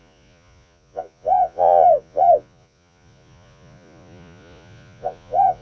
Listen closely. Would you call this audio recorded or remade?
remade